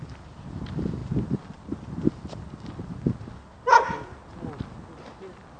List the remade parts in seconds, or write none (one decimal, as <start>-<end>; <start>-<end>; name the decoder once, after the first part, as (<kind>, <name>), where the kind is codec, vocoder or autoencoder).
1.0-2.0 (vocoder, BigVGAN v2)